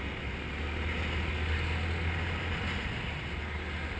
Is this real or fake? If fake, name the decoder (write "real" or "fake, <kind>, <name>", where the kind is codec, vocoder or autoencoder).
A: real